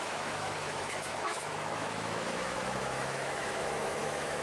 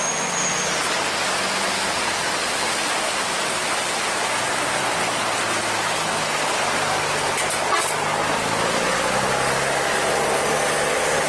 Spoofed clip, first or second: first